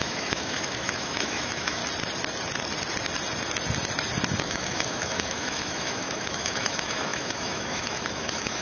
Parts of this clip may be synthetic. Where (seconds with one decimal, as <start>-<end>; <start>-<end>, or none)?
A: 0.0-1.8; 4.4-8.6